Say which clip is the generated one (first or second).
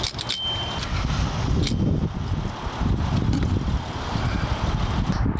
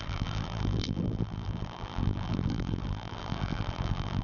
second